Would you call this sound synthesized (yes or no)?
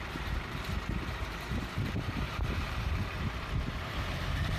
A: yes